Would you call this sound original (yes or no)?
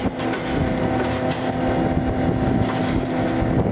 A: yes